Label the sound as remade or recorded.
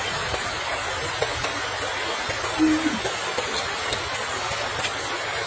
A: recorded